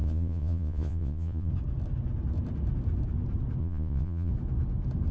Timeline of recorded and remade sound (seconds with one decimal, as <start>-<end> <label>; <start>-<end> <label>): 0.0-1.5 remade; 1.5-3.6 recorded; 3.6-4.3 remade; 4.3-5.1 recorded